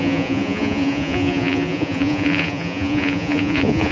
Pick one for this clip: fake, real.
fake